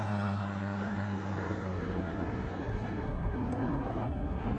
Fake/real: fake